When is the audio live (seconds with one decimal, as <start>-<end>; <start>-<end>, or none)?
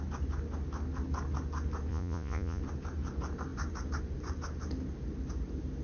0.0-1.9; 2.6-5.8